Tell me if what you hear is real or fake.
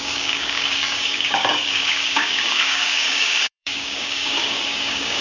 fake